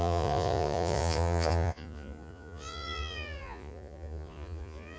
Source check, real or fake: fake